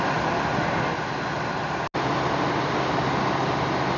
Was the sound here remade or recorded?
recorded